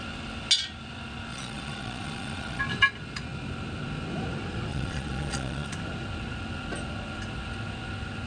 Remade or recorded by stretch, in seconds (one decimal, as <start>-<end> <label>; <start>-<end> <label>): 0.0-1.3 recorded; 1.3-2.6 remade; 2.6-4.7 recorded; 4.7-5.7 remade; 5.7-8.3 recorded